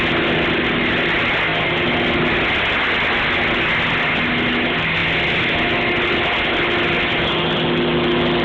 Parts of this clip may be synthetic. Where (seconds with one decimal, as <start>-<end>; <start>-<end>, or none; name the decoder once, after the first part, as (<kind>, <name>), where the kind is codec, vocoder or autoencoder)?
none

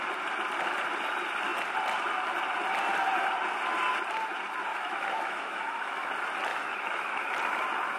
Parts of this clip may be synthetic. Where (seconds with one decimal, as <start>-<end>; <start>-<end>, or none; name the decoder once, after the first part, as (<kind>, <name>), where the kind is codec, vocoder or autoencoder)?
4.7-6.1 (autoencoder, DAC-VAE); 6.5-7.3

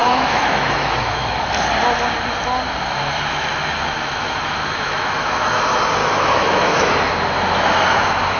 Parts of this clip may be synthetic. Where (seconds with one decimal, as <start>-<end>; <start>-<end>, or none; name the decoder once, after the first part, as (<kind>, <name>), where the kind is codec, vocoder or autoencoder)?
0.0-1.4 (autoencoder, DAC-VAE); 3.3-5.6; 6.0-6.9